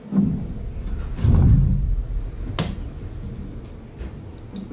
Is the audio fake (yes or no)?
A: no